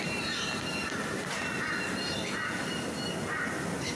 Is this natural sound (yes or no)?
yes